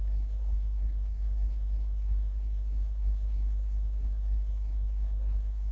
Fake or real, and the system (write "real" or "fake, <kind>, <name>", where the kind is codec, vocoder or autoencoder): fake, codec, SNAC